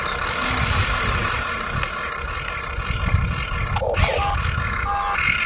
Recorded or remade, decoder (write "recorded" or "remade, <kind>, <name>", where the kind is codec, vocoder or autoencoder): recorded